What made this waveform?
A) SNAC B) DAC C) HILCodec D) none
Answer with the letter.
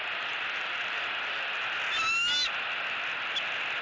D